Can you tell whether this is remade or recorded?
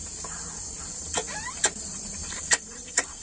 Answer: remade